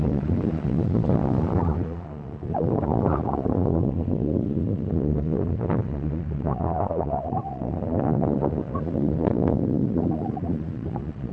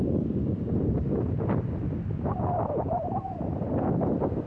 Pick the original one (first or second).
second